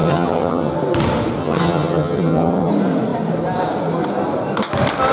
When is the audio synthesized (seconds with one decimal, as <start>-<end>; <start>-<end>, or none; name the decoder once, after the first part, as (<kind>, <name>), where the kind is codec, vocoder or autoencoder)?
0.0-0.7 (vocoder, HiFi-GAN); 1.4-2.7